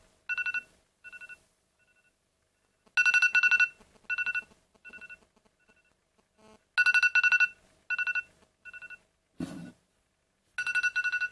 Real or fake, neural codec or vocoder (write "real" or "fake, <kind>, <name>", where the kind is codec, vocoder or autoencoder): real